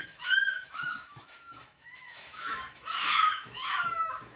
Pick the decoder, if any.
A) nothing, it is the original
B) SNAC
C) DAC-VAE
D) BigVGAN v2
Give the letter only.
C